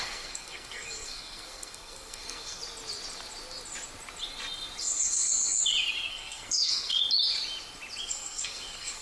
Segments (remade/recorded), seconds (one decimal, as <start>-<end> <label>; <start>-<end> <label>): 0.0-2.6 remade; 2.6-4.8 recorded; 4.8-5.6 remade; 5.6-6.1 recorded; 6.1-7.0 remade; 7.0-8.0 recorded; 8.0-9.0 remade